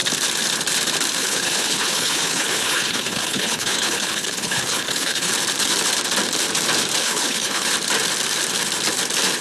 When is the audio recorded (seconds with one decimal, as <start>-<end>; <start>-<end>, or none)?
0.0-1.2; 5.3-7.0; 7.7-9.4